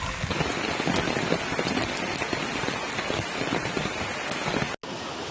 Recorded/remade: recorded